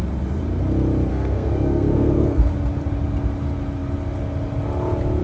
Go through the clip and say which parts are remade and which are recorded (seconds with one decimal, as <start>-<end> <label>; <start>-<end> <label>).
0.0-1.1 recorded; 1.1-2.5 remade; 2.5-5.2 recorded